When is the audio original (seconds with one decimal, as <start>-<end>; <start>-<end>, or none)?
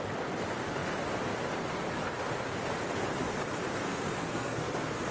0.0-3.8